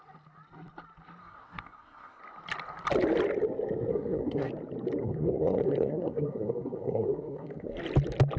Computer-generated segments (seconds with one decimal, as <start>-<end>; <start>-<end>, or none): 1.2-2.2; 3.9-4.5; 5.0-7.8